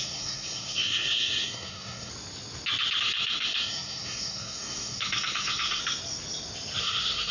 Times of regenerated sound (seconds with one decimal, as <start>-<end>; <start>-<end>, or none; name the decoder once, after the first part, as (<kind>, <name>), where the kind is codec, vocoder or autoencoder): 0.0-2.1 (codec, SNAC); 3.0-5.8; 6.8-7.3